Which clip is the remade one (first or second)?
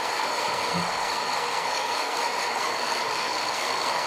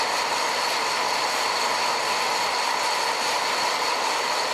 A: first